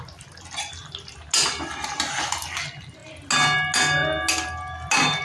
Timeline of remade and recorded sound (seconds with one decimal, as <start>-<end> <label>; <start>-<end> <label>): 0.0-5.2 recorded